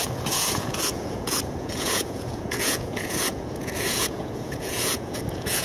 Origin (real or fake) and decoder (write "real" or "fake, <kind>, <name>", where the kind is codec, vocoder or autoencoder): fake, vocoder, Vocos